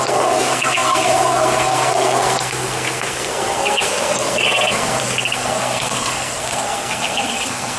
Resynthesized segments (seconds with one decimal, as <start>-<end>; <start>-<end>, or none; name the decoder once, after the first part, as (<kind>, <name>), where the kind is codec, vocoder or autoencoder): 0.0-7.8 (codec, SNAC)